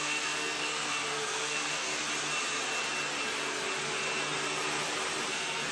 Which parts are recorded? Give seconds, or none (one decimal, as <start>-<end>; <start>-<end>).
1.9-5.3